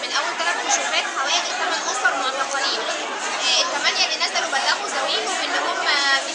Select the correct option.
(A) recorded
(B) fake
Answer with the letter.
A